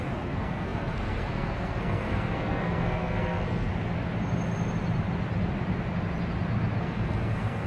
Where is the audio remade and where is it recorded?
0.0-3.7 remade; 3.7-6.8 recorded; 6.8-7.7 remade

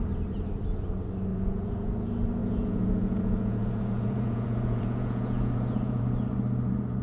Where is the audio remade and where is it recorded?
0.0-1.3 recorded; 1.3-1.9 remade; 1.9-2.4 recorded; 2.4-6.0 remade; 6.0-7.0 recorded

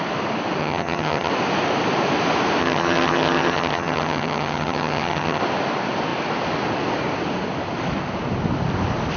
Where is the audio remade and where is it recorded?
0.0-0.6 recorded; 0.6-1.3 remade; 1.3-2.6 recorded; 2.6-5.4 remade; 5.4-9.2 recorded